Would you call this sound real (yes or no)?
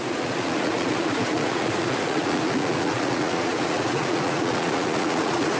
no